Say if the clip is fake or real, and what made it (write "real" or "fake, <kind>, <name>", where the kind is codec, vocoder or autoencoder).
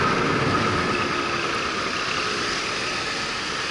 real